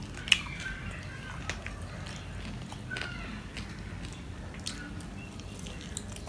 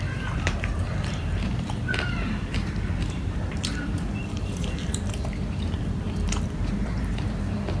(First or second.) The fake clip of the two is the second